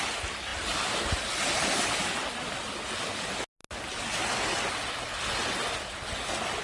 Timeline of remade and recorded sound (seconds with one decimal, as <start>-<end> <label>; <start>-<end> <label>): 0.0-6.6 recorded